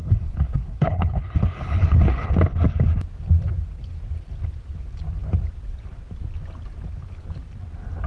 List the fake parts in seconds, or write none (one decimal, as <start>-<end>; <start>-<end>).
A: 0.0-2.3